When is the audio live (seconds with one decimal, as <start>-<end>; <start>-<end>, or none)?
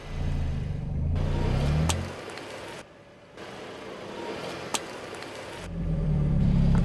0.0-4.7